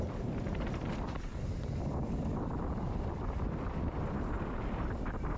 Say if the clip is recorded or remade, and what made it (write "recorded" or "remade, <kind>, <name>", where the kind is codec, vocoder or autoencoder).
remade, vocoder, BigVGAN v2